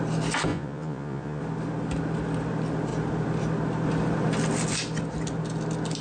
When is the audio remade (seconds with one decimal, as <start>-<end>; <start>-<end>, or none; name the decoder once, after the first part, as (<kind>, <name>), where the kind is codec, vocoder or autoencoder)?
0.5-1.4 (vocoder, Vocos)